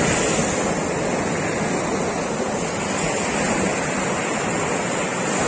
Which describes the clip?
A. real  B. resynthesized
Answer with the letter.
A